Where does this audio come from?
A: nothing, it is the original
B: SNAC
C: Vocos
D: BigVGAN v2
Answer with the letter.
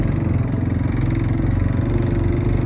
A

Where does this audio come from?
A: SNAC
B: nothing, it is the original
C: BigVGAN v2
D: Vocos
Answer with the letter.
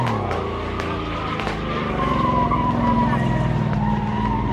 B